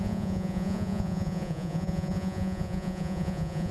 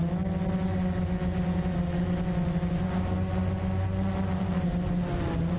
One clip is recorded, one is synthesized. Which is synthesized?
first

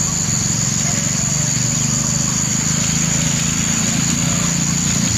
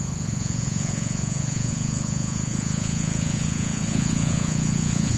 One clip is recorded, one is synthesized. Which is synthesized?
second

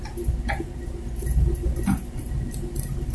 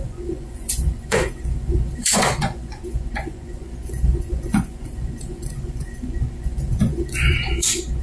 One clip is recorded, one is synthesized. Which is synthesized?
second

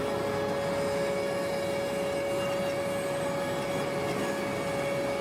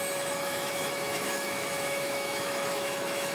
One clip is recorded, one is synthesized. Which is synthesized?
second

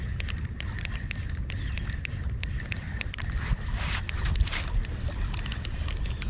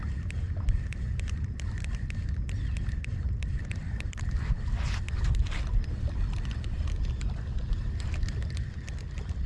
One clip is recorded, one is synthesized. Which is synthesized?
first